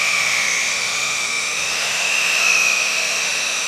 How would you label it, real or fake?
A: fake